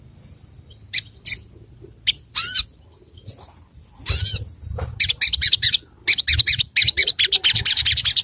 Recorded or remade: recorded